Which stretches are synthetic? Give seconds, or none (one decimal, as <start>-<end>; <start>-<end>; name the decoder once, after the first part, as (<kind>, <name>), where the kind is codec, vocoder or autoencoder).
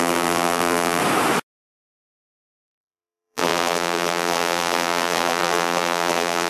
0.0-1.0 (vocoder, BigVGAN v2); 2.1-6.5